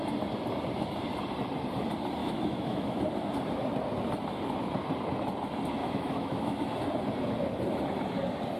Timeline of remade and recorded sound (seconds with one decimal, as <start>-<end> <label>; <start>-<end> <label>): 0.0-2.2 recorded; 2.2-3.0 remade; 3.0-5.8 recorded; 5.8-6.6 remade; 6.6-8.6 recorded